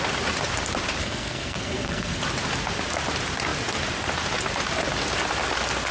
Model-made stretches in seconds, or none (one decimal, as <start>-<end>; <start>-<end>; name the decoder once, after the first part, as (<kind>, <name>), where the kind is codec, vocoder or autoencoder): 1.0-2.2 (codec, SNAC)